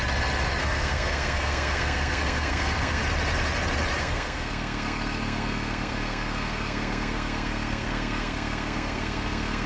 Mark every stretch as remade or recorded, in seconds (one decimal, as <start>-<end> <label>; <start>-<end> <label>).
0.0-0.6 recorded; 0.6-3.0 remade; 3.0-4.0 recorded; 4.0-9.7 remade